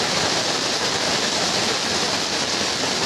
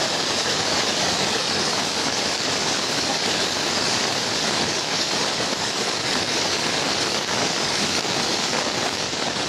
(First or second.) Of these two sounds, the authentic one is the first